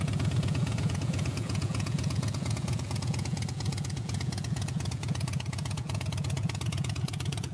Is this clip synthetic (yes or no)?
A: yes